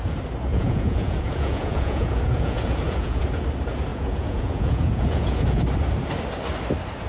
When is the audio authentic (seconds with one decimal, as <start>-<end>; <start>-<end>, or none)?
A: 0.0-0.5; 3.3-3.9; 5.6-7.1